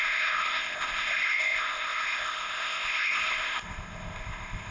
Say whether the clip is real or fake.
fake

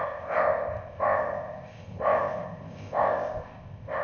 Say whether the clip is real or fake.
fake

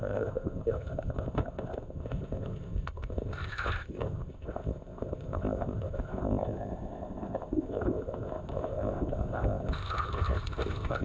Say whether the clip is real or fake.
fake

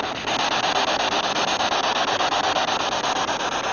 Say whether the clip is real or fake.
real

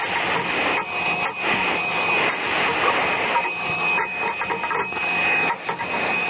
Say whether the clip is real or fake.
real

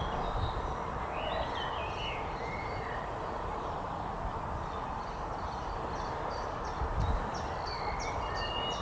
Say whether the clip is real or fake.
real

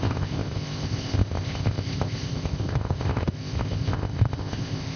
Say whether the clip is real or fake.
fake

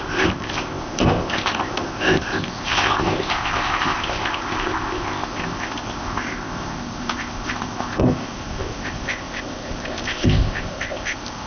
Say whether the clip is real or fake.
fake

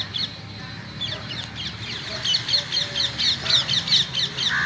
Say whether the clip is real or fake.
real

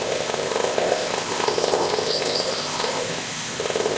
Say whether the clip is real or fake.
fake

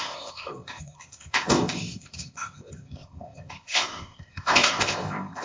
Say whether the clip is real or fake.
fake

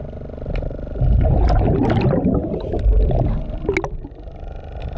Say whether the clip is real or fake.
real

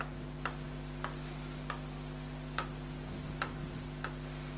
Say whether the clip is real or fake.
real